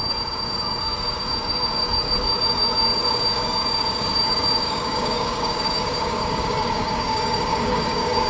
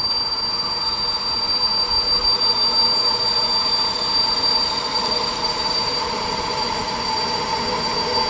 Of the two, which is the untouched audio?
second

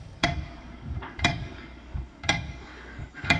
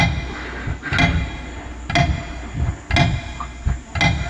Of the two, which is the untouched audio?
second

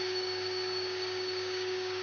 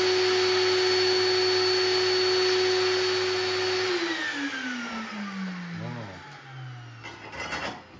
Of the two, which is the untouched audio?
second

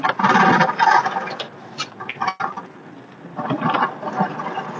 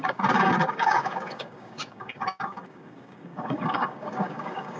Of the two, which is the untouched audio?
first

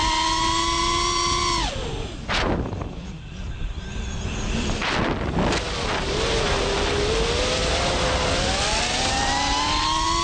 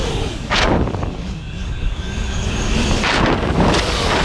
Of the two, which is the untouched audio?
first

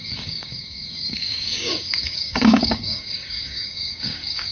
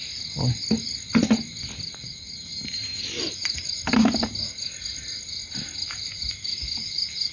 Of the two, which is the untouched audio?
second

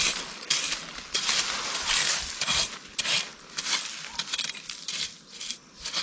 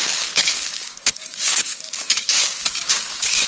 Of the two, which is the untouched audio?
first